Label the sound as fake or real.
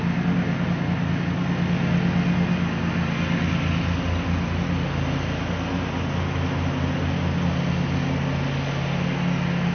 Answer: real